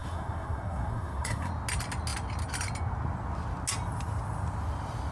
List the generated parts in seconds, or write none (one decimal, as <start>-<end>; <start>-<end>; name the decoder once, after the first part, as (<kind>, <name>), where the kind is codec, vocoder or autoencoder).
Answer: 0.0-1.5 (codec, SNAC)